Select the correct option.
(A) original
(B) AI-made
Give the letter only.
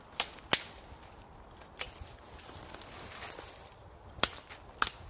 A